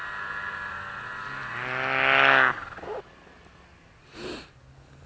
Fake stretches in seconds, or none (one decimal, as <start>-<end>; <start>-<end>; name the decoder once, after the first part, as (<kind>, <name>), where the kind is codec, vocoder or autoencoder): none